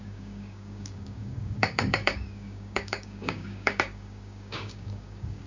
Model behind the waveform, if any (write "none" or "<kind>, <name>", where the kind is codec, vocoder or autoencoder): codec, DAC